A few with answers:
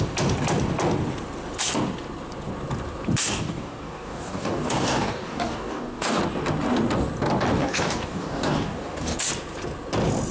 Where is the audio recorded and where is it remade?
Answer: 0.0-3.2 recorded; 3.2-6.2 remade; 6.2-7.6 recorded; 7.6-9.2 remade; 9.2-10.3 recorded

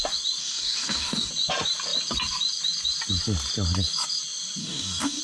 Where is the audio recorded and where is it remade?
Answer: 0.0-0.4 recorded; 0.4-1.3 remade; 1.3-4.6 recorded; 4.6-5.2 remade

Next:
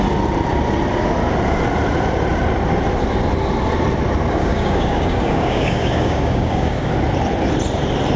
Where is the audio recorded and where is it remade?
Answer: 0.0-4.4 recorded; 4.4-6.9 remade; 6.9-8.2 recorded

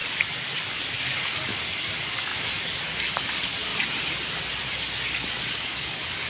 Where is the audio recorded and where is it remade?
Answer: 0.0-3.7 remade; 3.7-5.0 recorded; 5.0-6.3 remade

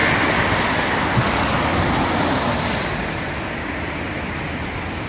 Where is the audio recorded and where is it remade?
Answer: 0.0-5.1 recorded

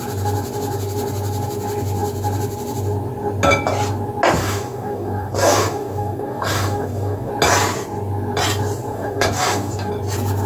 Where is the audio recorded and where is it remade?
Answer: 0.0-4.4 recorded; 4.4-7.3 remade; 7.3-8.9 recorded; 8.9-9.9 remade; 9.9-10.5 recorded

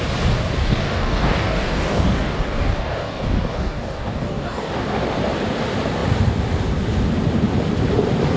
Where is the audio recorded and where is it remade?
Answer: 0.0-0.6 recorded; 0.6-4.7 remade; 4.7-8.4 recorded